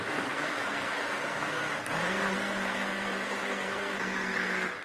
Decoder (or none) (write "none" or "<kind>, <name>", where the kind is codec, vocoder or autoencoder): codec, SNAC